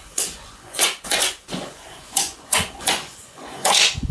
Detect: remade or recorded remade